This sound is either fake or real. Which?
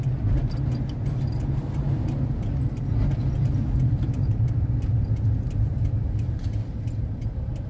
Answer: real